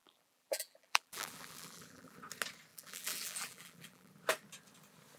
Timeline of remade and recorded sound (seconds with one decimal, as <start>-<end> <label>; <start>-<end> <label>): 0.0-2.2 remade; 2.2-2.7 recorded; 2.7-4.1 remade; 4.1-5.2 recorded